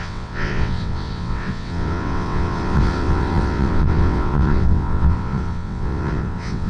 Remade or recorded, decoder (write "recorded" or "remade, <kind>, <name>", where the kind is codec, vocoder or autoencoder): remade, vocoder, WaveNeXt